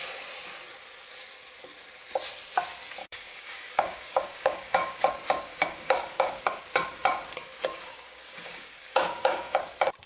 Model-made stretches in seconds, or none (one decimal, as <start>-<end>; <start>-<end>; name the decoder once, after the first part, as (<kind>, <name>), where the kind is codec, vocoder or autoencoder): 3.0-5.1 (codec, DAC); 5.5-6.4; 7.5-9.6